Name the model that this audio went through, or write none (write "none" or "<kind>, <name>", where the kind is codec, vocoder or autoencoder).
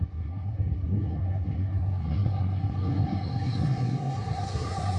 codec, SNAC